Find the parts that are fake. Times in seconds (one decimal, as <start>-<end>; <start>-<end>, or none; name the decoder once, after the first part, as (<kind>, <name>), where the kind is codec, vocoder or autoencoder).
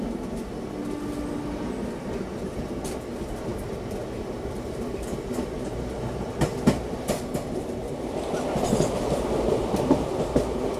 none